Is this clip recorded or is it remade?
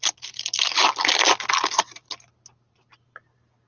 recorded